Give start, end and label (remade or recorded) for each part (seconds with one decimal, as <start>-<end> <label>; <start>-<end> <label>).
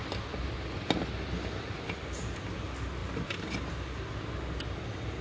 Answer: 0.0-5.2 recorded